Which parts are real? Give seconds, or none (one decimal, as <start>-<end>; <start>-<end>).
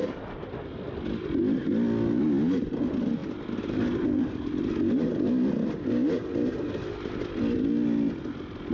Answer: 0.0-8.7